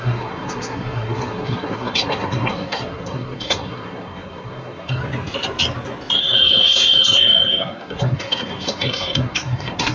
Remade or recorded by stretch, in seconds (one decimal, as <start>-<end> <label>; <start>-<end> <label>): 0.0-5.0 remade; 5.0-6.2 recorded; 6.2-9.9 remade